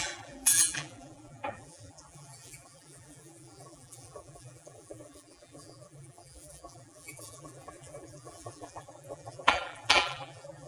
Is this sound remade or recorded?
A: remade